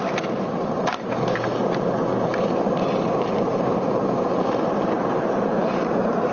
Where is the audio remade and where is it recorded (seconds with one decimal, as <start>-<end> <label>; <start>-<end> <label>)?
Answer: 0.0-0.8 recorded; 0.8-6.3 remade